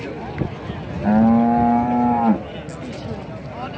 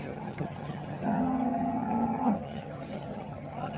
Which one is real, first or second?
first